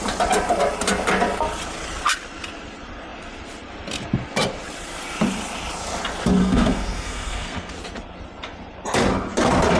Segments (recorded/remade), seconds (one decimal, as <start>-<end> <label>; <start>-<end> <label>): 0.0-6.4 recorded; 6.4-7.7 remade; 7.7-9.8 recorded